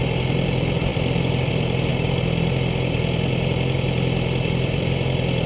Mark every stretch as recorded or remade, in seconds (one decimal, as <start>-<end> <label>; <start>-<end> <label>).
0.0-1.9 remade; 1.9-5.5 recorded